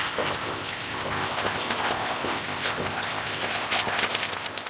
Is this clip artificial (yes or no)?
yes